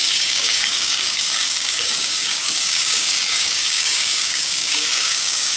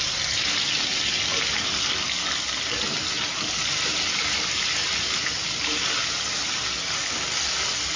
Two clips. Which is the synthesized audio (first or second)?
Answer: first